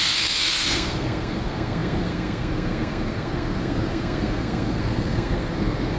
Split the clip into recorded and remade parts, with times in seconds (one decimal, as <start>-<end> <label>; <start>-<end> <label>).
0.0-6.0 remade